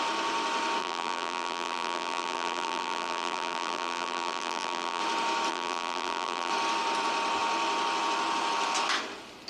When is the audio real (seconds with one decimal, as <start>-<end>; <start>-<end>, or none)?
0.0-0.8; 5.0-5.5; 6.5-9.5